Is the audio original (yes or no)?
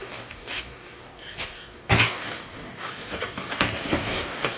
no